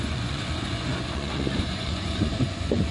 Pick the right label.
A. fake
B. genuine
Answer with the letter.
A